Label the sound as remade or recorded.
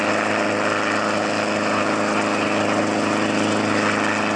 recorded